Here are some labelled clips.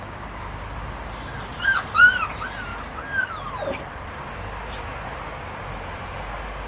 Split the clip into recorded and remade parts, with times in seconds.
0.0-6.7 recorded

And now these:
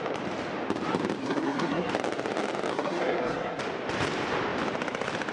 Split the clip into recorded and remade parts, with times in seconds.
0.0-1.2 recorded; 1.2-1.9 remade; 1.9-2.7 recorded; 2.7-3.6 remade; 3.6-5.3 recorded

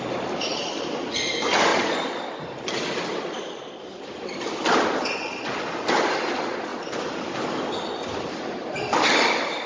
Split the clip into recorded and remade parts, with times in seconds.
0.0-9.7 recorded

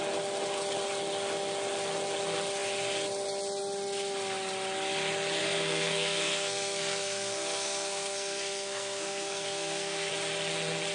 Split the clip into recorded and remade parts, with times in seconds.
0.0-5.4 recorded; 5.4-10.1 remade; 10.1-10.9 recorded